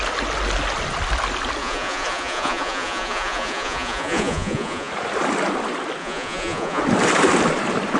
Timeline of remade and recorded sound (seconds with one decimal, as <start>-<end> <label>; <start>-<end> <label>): 0.0-1.6 recorded; 1.6-4.9 remade; 4.9-6.0 recorded; 6.0-6.8 remade; 6.8-8.0 recorded